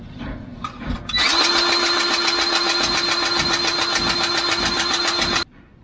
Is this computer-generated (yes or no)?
no